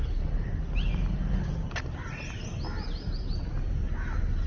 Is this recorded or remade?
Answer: recorded